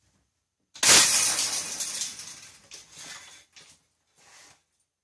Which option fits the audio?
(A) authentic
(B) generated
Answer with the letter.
A